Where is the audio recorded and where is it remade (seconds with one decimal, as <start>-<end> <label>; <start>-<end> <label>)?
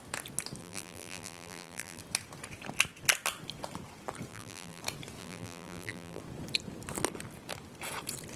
0.0-0.6 recorded; 0.6-2.0 remade; 2.0-4.3 recorded; 4.3-4.8 remade; 4.8-5.2 recorded; 5.2-6.2 remade; 6.2-8.4 recorded